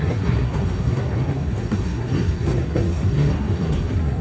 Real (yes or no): no